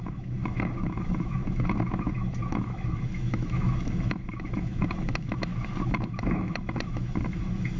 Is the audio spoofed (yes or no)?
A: yes